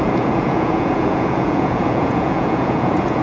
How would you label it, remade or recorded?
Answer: remade